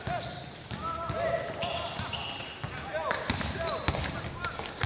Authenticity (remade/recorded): recorded